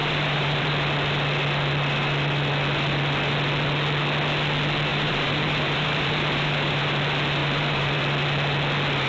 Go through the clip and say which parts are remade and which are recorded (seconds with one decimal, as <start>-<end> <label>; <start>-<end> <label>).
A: 0.0-0.7 remade; 0.7-4.9 recorded; 4.9-6.8 remade; 6.8-7.4 recorded; 7.4-8.0 remade; 8.0-9.1 recorded